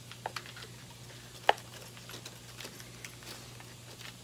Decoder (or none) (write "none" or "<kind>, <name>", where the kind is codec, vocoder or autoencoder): none